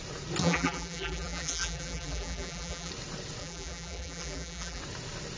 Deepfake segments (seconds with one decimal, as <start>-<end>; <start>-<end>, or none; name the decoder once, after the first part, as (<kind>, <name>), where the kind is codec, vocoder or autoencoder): 0.4-2.9 (vocoder, BigVGAN v2); 3.4-4.8